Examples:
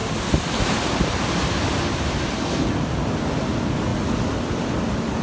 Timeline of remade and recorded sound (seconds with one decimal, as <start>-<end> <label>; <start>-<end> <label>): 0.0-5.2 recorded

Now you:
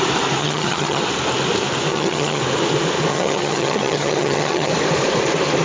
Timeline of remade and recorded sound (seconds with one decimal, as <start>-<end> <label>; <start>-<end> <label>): 0.0-0.4 recorded; 0.4-1.0 remade; 1.0-1.9 recorded; 1.9-2.4 remade; 2.4-3.1 recorded; 3.1-4.7 remade; 4.7-5.6 recorded

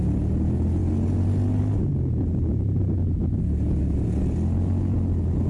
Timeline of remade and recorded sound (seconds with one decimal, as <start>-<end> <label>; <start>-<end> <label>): 0.0-5.5 recorded

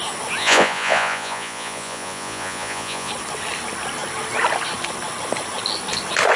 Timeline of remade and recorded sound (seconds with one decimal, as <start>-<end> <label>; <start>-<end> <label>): 0.0-0.4 recorded; 0.4-3.1 remade; 3.1-6.4 recorded

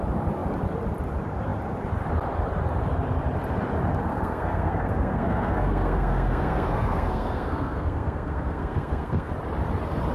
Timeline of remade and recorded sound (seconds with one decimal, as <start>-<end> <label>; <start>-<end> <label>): 0.0-4.1 recorded; 4.1-9.3 remade; 9.3-10.1 recorded

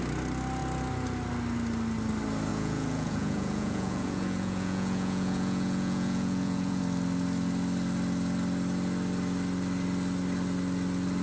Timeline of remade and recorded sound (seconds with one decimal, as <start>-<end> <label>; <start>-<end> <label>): 0.0-2.5 recorded; 2.5-6.8 remade; 6.8-11.2 recorded

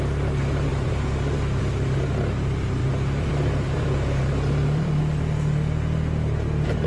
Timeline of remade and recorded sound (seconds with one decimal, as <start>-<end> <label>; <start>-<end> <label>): 0.0-0.7 recorded; 0.7-1.6 remade; 1.6-2.8 recorded; 2.8-5.0 remade; 5.0-6.9 recorded

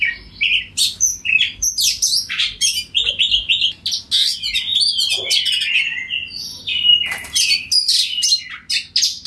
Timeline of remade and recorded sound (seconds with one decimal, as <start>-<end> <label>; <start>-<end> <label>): 0.0-1.1 recorded; 1.1-3.1 remade; 3.1-9.3 recorded